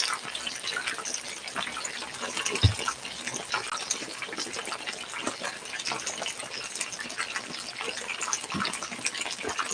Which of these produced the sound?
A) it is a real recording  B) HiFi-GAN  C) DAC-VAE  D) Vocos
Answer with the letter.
A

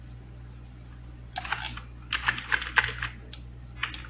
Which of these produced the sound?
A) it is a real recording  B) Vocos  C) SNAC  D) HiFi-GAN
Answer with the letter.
A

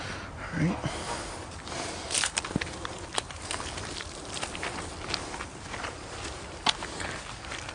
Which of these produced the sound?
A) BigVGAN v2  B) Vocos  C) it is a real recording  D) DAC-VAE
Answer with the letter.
C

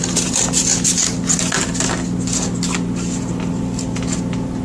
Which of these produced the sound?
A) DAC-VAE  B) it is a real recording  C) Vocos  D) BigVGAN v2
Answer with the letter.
B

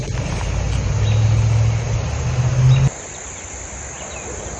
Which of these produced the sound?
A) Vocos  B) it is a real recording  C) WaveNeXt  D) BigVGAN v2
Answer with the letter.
B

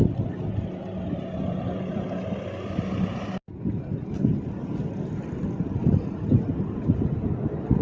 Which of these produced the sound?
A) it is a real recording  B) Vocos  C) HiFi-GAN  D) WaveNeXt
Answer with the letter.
A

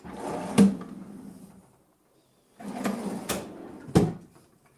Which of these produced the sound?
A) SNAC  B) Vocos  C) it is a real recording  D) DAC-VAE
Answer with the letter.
C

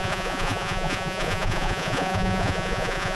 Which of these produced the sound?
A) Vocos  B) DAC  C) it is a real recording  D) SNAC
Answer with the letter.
A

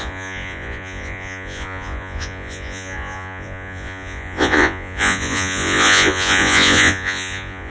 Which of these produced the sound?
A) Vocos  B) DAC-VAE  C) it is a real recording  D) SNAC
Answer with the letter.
A